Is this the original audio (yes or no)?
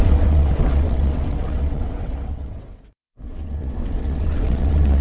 no